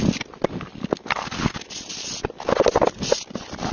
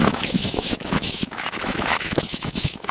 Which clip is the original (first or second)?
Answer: first